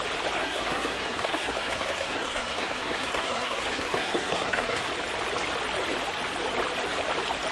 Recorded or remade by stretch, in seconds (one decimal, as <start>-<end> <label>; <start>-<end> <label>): 0.0-0.4 recorded; 0.4-4.9 remade; 4.9-7.5 recorded